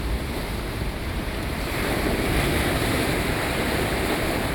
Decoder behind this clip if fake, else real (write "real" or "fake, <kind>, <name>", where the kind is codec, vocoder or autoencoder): fake, vocoder, BigVGAN v2